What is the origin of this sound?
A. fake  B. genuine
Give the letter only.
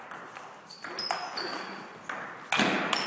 B